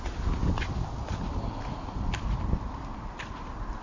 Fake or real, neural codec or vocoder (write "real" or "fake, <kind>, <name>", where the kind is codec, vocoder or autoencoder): real